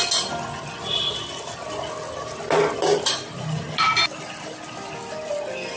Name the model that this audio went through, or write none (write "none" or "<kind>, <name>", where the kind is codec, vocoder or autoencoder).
none